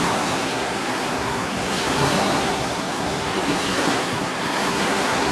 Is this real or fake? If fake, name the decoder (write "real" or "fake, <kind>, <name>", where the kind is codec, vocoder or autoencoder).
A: fake, codec, SNAC